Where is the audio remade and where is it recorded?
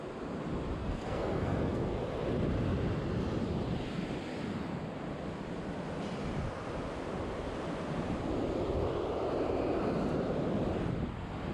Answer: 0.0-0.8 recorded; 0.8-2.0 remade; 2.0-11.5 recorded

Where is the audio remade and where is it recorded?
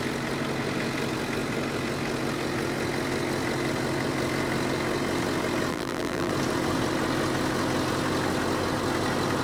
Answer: 0.0-5.7 recorded; 5.7-6.3 remade; 6.3-9.4 recorded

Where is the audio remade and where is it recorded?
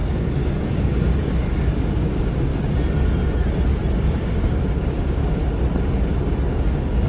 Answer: 0.0-2.5 remade; 2.5-4.0 recorded; 4.0-5.4 remade; 5.4-6.5 recorded; 6.5-7.1 remade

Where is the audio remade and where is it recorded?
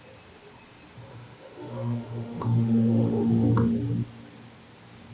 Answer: 0.0-1.1 recorded; 1.1-3.3 remade; 3.3-5.1 recorded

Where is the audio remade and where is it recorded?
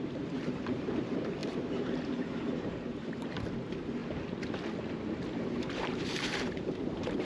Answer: 0.0-4.0 remade; 4.0-5.5 recorded; 5.5-7.2 remade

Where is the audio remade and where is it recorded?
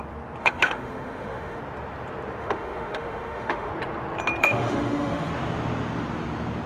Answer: 0.0-0.4 recorded; 0.4-1.6 remade; 1.6-2.4 recorded; 2.4-3.7 remade; 3.7-4.4 recorded; 4.4-5.3 remade; 5.3-6.7 recorded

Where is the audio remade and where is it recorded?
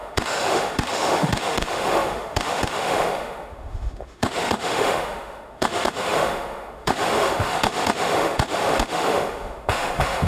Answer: 0.0-10.3 remade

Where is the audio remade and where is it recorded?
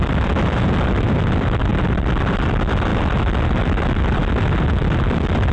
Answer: 0.0-2.9 remade; 2.9-3.5 recorded; 3.5-4.2 remade; 4.2-4.8 recorded; 4.8-5.5 remade